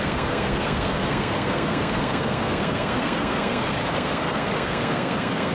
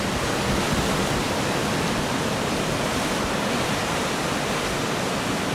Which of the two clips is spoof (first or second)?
first